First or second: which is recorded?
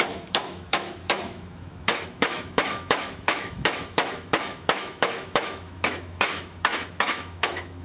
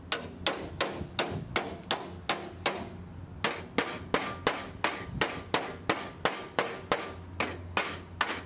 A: second